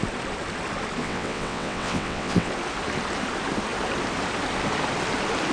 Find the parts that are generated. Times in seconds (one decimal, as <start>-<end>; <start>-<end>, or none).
1.0-2.5